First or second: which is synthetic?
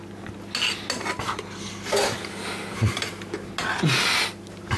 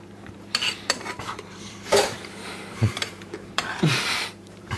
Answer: second